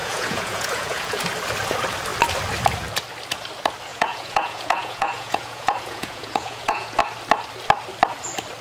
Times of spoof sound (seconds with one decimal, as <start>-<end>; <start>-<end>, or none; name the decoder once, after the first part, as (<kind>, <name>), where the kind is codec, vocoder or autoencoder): 0.0-1.2 (vocoder, Vocos); 3.9-7.0